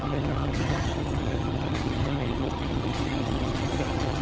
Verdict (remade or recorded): remade